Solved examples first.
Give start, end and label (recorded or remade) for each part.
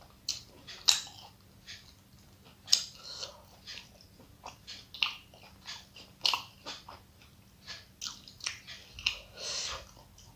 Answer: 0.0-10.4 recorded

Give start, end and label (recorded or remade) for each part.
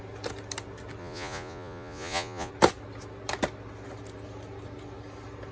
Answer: 0.0-1.0 recorded; 1.0-2.5 remade; 2.5-5.5 recorded